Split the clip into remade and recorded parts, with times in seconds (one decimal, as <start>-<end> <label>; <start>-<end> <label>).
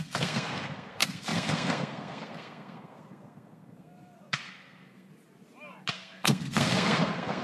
0.0-5.1 remade; 5.1-5.9 recorded; 5.9-7.4 remade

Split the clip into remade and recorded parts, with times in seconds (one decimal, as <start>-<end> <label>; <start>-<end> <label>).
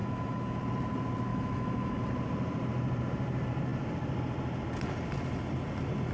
0.0-0.6 remade; 0.6-1.3 recorded; 1.3-2.0 remade; 2.0-6.1 recorded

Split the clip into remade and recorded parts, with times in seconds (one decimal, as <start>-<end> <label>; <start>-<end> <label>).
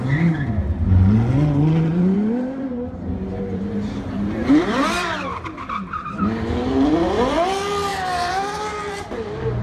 0.0-1.9 recorded; 1.9-5.6 remade; 5.6-7.9 recorded; 7.9-8.8 remade; 8.8-9.6 recorded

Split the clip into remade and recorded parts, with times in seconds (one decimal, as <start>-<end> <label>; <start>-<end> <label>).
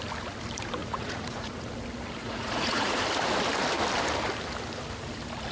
0.0-0.8 recorded; 0.8-1.7 remade; 1.7-2.2 recorded; 2.2-3.0 remade; 3.0-5.5 recorded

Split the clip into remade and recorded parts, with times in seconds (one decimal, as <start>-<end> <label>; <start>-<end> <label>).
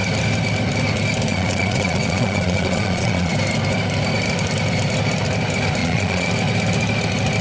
0.0-1.3 recorded; 1.3-3.3 remade; 3.3-5.8 recorded; 5.8-6.3 remade; 6.3-7.4 recorded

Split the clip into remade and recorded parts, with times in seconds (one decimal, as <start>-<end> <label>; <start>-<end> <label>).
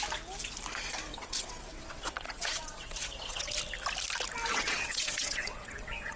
0.0-1.1 recorded; 1.1-3.5 remade; 3.5-4.5 recorded; 4.5-6.2 remade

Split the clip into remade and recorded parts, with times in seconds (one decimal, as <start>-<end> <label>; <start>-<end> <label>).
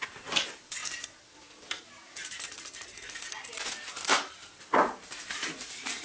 0.0-0.8 remade; 0.8-4.4 recorded; 4.4-6.0 remade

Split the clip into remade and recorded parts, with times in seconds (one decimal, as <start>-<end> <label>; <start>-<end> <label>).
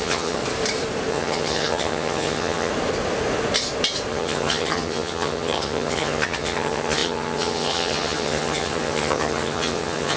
0.0-0.4 remade; 0.4-1.1 recorded; 1.1-2.7 remade; 2.7-4.1 recorded; 4.1-10.2 remade